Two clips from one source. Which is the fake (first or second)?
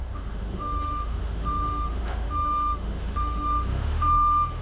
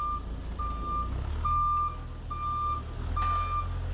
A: first